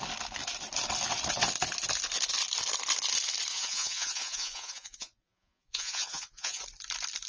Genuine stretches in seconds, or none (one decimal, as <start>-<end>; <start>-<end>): 0.0-3.5; 6.6-7.3